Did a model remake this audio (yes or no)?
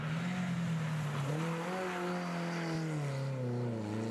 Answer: no